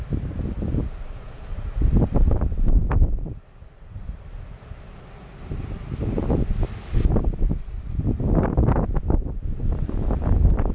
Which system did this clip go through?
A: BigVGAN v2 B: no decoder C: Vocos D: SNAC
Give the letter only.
B